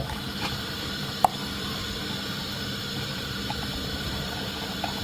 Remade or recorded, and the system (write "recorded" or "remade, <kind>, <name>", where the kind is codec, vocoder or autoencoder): remade, vocoder, BigVGAN v2